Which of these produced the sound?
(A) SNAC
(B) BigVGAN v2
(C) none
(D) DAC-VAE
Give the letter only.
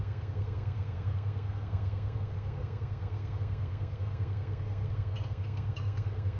A